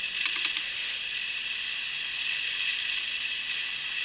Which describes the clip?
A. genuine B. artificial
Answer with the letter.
A